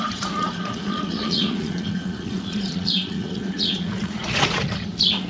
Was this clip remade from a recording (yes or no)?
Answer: yes